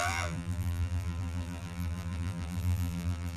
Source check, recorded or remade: remade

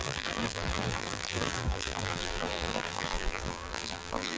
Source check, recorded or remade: remade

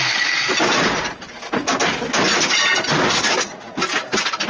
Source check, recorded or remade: recorded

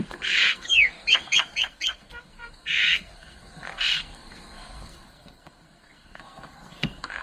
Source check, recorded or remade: remade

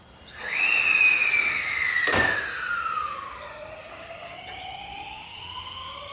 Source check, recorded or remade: recorded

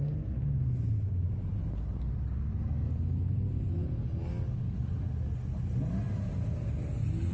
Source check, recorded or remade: recorded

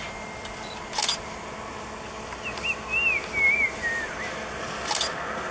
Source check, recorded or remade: recorded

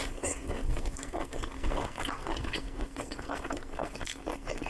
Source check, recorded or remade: remade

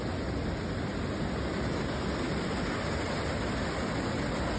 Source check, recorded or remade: recorded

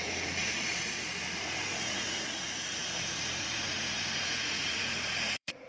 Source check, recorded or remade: remade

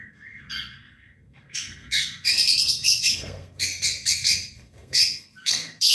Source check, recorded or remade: remade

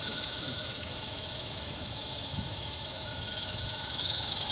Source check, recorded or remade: remade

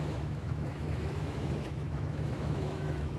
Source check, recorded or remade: remade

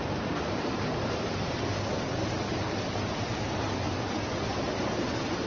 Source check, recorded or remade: remade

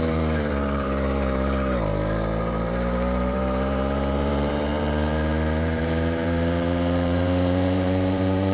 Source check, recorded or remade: remade